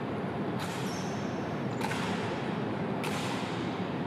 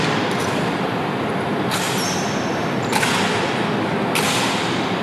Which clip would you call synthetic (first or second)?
first